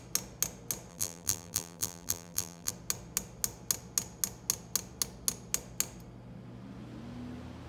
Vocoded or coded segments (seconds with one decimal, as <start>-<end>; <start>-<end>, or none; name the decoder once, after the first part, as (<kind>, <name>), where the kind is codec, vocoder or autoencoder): 0.9-2.7 (vocoder, BigVGAN v2)